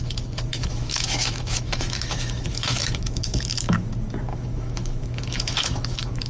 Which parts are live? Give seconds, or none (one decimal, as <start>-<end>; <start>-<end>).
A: 0.0-0.5; 3.8-4.3